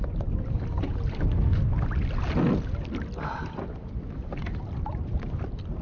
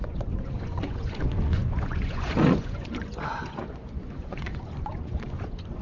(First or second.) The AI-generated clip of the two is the second